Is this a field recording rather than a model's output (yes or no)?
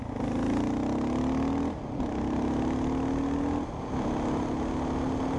yes